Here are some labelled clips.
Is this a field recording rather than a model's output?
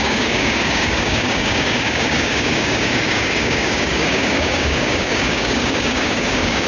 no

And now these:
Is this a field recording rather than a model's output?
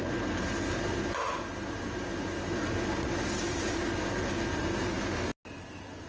yes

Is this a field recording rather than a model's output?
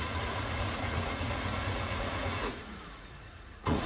no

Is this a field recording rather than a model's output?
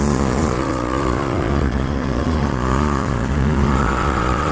no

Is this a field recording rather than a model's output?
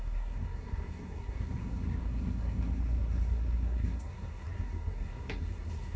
no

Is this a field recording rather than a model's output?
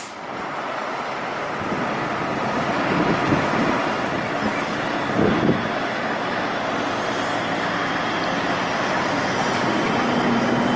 yes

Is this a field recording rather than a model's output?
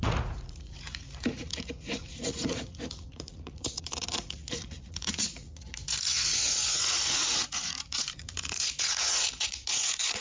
no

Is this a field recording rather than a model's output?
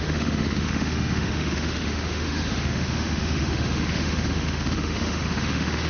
no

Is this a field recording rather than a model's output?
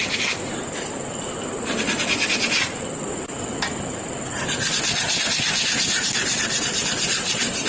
yes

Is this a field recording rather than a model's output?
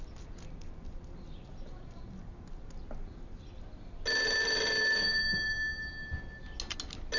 yes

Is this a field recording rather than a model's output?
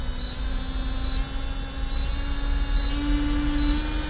yes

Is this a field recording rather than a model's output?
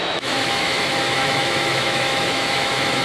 no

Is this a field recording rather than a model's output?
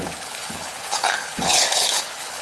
no